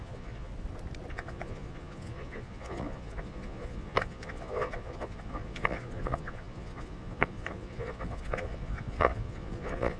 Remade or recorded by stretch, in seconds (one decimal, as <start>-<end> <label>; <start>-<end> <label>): 0.0-0.5 remade; 0.5-1.1 recorded; 1.1-10.0 remade